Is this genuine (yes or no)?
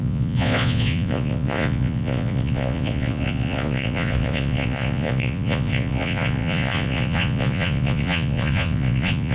no